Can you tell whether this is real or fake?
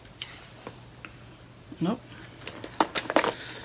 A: real